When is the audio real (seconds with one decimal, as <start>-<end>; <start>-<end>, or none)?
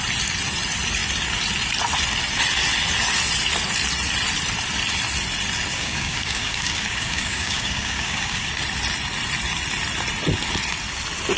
0.0-5.7; 8.5-11.4